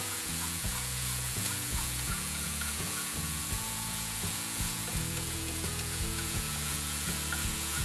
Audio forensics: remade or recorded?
remade